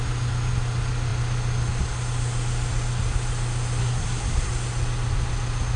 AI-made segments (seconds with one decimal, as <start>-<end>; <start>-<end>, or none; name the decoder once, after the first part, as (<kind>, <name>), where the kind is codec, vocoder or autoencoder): 3.8-4.5 (codec, SNAC)